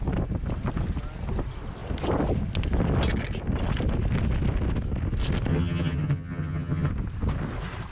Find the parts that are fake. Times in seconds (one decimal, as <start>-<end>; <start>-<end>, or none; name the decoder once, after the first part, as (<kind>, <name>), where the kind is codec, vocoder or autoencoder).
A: 5.5-6.9 (vocoder, HiFi-GAN)